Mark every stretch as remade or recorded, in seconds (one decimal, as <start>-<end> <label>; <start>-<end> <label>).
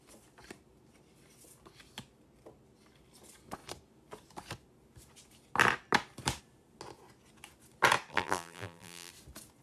0.0-8.1 recorded; 8.1-9.1 remade; 9.1-9.6 recorded